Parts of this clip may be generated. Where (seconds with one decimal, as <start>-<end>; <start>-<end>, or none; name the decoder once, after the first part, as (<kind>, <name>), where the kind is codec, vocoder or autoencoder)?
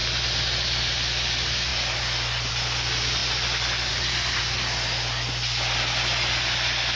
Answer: none